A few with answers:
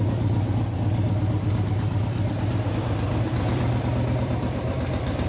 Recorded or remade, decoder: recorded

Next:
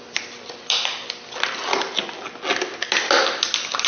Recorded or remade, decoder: recorded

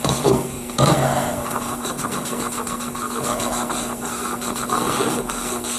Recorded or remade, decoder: remade, codec, SNAC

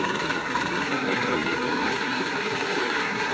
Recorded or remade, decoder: remade, codec, SNAC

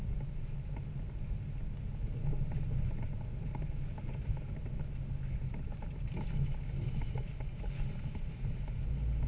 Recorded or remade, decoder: recorded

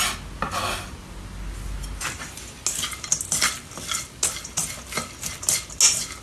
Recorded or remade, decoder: recorded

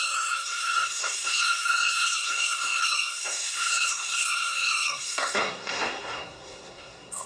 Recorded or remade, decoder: remade, codec, SNAC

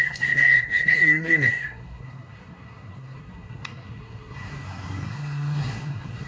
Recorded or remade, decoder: remade, codec, SNAC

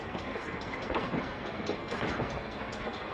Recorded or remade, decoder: remade, codec, SNAC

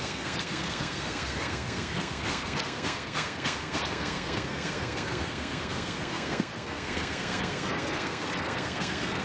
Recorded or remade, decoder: remade, codec, SNAC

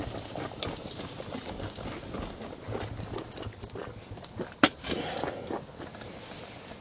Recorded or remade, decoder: recorded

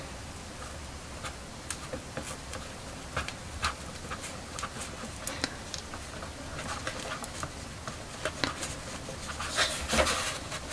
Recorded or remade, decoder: recorded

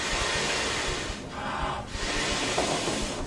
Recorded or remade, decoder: recorded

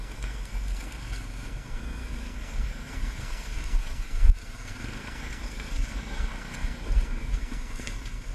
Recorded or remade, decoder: remade, codec, SNAC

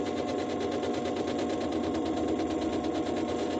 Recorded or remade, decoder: recorded